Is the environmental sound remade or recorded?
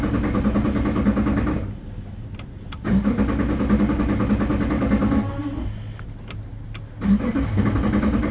recorded